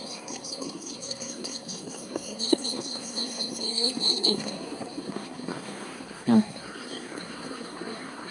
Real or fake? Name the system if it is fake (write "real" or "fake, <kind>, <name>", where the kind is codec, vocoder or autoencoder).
fake, codec, SNAC